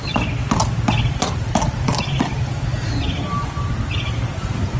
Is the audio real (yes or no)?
yes